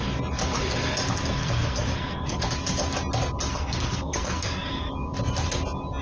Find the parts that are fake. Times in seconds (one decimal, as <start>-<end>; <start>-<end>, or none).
1.4-2.4; 3.5-4.9